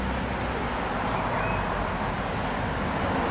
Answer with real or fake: real